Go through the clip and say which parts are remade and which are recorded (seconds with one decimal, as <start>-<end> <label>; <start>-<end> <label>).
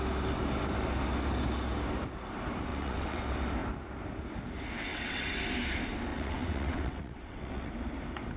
0.0-2.7 recorded; 2.7-3.2 remade; 3.2-4.9 recorded; 4.9-5.4 remade; 5.4-6.1 recorded; 6.1-7.7 remade; 7.7-8.4 recorded